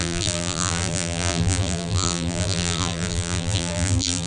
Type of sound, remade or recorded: remade